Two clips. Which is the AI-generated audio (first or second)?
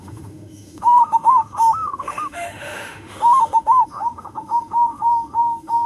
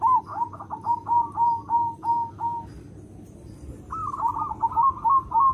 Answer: first